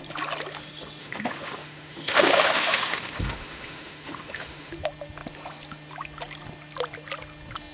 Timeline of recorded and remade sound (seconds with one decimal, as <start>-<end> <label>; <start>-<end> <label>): 0.0-1.0 recorded; 1.0-4.7 remade; 4.7-7.7 recorded